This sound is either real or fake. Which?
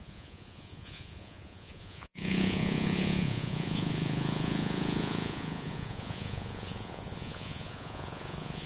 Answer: fake